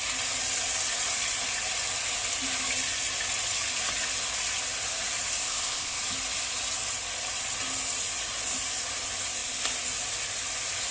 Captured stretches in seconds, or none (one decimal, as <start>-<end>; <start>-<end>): 0.0-5.4; 6.0-10.9